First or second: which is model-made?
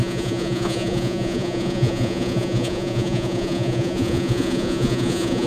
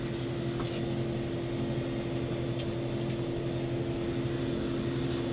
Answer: first